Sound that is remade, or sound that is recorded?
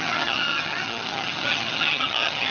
remade